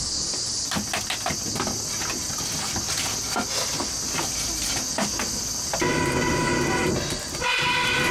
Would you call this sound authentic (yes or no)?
yes